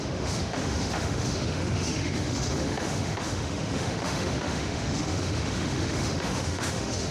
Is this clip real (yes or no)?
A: no